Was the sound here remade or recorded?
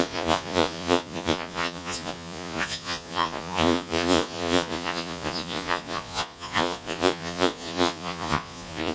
remade